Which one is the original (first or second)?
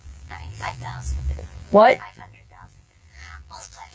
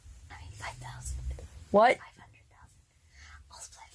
second